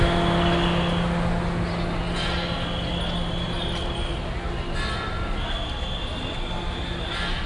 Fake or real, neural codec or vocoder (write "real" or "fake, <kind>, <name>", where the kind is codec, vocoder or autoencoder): real